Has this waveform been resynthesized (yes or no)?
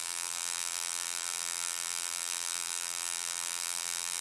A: yes